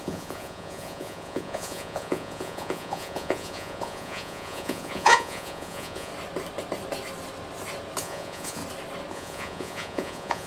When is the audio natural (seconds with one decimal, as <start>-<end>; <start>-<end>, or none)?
6.1-8.0; 8.6-9.1